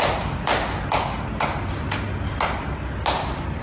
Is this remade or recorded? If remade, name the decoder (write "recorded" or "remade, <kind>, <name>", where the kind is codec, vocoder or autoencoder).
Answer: recorded